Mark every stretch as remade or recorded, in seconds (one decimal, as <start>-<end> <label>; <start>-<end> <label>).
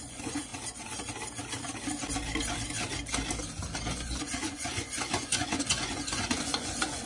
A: 0.0-0.5 remade; 0.5-3.9 recorded; 3.9-7.1 remade